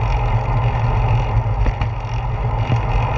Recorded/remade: recorded